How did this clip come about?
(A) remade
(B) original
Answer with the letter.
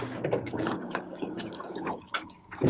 A